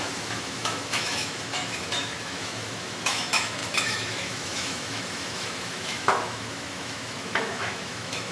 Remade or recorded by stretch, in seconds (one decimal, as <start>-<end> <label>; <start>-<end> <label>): 0.0-8.3 remade